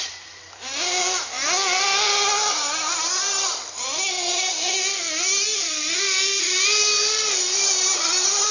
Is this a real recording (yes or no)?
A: yes